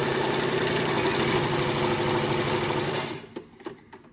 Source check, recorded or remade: recorded